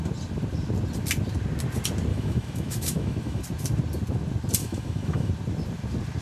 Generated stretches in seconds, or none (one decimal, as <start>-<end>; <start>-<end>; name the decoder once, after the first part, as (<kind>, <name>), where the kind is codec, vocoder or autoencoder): 2.1-3.4 (autoencoder, DAC-VAE); 4.6-5.3